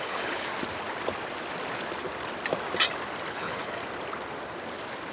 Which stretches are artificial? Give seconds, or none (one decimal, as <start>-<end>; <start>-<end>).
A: 0.0-0.5; 3.3-3.8